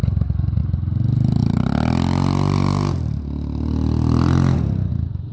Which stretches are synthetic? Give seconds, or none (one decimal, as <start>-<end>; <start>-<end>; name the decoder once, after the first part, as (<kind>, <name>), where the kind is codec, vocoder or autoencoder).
none